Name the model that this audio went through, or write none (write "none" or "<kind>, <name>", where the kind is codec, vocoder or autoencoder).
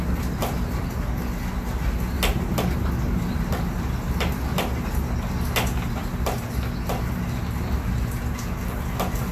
none